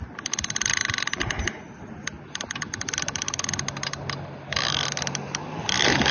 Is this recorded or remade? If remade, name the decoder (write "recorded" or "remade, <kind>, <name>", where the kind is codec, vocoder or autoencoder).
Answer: recorded